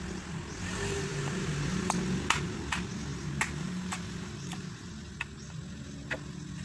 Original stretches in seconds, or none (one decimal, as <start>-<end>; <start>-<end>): 0.0-1.1; 1.8-3.1; 4.9-6.6